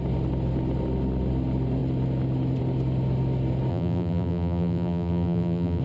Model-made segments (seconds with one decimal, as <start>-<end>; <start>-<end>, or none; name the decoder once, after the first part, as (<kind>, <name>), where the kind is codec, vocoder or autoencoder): 3.7-5.8 (vocoder, BigVGAN v2)